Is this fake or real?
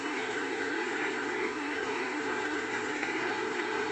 fake